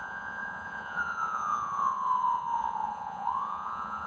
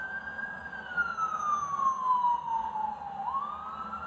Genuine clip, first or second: second